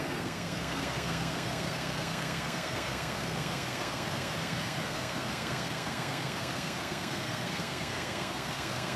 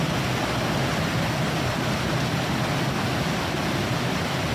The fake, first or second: first